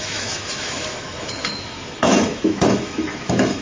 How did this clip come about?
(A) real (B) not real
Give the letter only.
B